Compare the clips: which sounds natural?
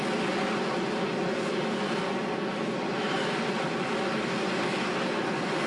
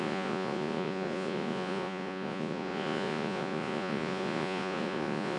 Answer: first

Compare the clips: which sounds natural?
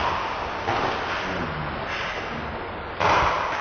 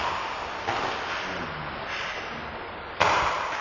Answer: first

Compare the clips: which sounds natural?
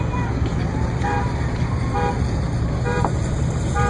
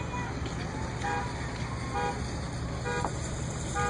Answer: second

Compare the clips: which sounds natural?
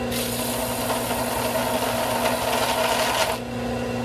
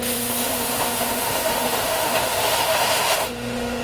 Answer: first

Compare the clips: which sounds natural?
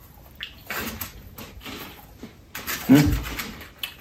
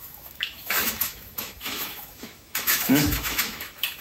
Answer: first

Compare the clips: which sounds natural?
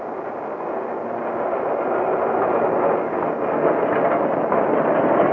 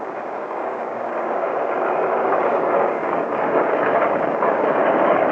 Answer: first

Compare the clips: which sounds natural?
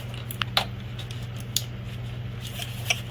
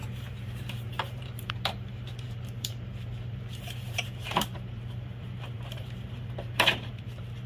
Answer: first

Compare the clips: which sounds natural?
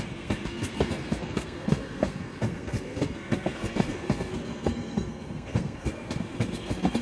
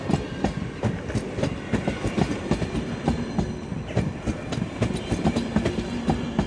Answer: second